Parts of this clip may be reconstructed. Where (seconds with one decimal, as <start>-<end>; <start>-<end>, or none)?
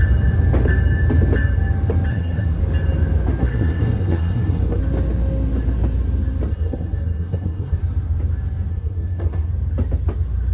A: 2.1-2.6; 3.4-4.8; 6.5-7.8; 8.7-9.5